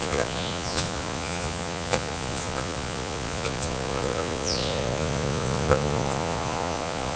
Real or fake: fake